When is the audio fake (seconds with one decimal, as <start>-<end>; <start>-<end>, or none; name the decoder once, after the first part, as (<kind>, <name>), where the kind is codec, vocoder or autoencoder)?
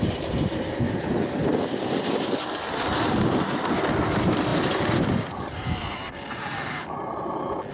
none